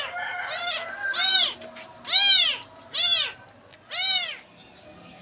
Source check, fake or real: real